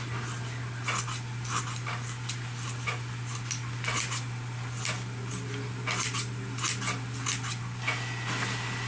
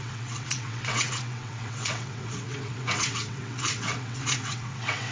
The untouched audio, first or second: first